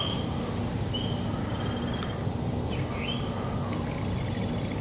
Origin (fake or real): real